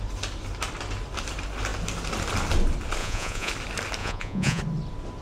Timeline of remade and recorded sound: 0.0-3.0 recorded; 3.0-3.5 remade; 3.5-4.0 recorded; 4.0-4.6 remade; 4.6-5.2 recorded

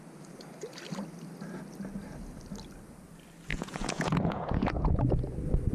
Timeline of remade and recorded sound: 0.0-3.5 recorded; 3.5-5.2 remade; 5.2-5.7 recorded

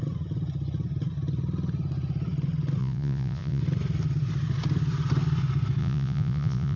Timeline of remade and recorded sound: 0.0-2.8 recorded; 2.8-3.6 remade; 3.6-5.8 recorded; 5.8-6.8 remade

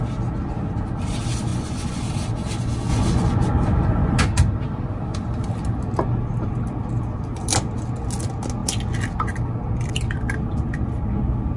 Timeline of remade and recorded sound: 0.0-1.5 recorded; 1.5-2.0 remade; 2.0-2.9 recorded; 2.9-4.2 remade; 4.2-11.6 recorded